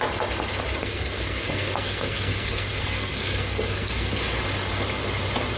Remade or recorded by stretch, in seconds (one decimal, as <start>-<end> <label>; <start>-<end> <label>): 0.0-0.8 recorded; 0.8-4.2 remade; 4.2-5.6 recorded